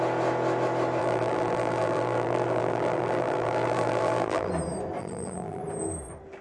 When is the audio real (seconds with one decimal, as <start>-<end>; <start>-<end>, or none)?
0.0-1.0; 4.5-5.0; 5.6-6.4